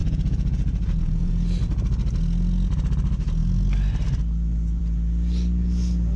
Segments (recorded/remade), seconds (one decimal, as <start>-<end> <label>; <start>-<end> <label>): 0.0-1.3 remade; 1.3-6.2 recorded